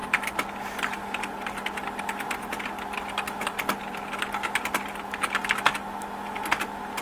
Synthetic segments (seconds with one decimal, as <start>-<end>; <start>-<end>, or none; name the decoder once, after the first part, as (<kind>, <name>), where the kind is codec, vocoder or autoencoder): none